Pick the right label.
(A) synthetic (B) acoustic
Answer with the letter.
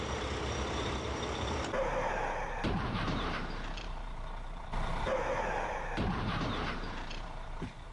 A